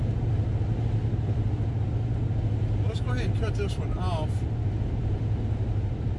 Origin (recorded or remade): recorded